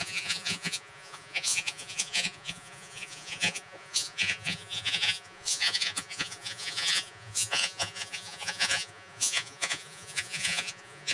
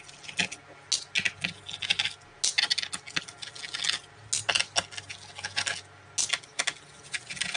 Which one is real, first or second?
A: second